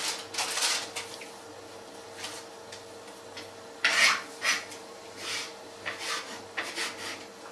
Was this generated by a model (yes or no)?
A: no